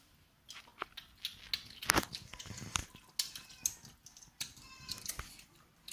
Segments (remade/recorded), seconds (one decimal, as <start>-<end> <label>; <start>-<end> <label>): 0.0-5.9 recorded